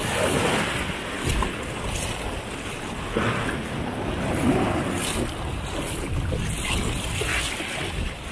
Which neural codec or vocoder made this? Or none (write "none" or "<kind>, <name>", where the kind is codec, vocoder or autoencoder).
none